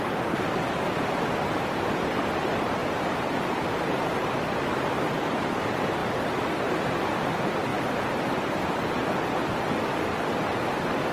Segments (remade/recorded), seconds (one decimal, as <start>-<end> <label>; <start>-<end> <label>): 0.0-6.0 recorded; 6.0-6.5 remade; 6.5-7.7 recorded; 7.7-8.6 remade; 8.6-11.1 recorded

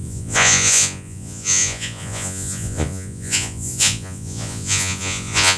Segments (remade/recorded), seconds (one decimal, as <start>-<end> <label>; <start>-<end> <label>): 0.0-5.6 remade

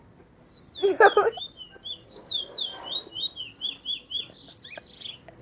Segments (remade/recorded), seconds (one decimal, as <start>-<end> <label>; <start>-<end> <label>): 0.0-5.4 recorded